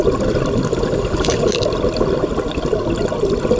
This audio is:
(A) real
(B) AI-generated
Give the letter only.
A